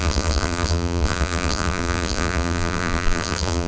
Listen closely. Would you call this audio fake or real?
fake